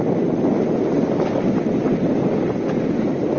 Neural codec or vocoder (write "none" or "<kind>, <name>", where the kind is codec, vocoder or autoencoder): none